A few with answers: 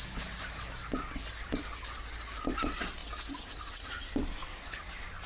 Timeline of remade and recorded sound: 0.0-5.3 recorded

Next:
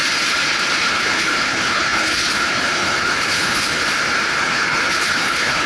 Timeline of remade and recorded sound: 0.0-0.9 recorded; 0.9-3.8 remade; 3.8-4.4 recorded; 4.4-5.7 remade

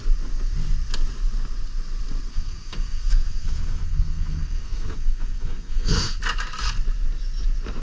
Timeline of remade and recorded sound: 0.0-2.3 recorded; 2.3-6.2 remade; 6.2-7.8 recorded

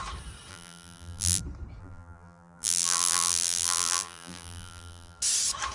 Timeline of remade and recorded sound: 0.0-0.5 recorded; 0.5-1.4 remade; 1.4-1.8 recorded; 1.8-5.2 remade; 5.2-5.7 recorded